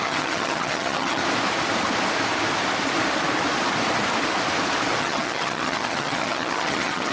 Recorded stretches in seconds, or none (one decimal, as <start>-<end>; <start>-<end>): 1.2-5.0